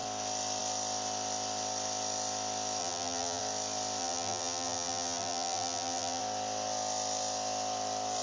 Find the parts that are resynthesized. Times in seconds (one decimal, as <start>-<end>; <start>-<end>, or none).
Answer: 2.8-3.4; 4.0-6.2